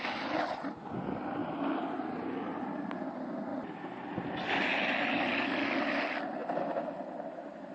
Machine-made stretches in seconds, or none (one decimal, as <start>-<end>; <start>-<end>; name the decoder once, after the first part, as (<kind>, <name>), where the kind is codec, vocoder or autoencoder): 3.5-4.4 (vocoder, BigVGAN v2); 6.4-7.7